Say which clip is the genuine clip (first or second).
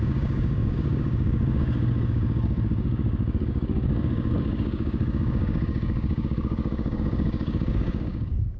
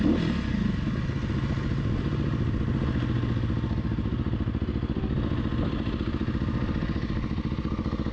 second